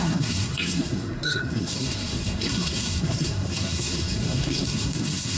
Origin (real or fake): fake